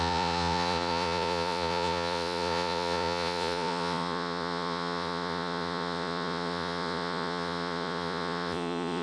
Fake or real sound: fake